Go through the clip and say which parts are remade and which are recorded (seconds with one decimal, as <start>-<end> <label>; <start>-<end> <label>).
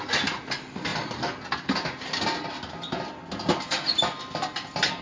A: 0.0-5.0 recorded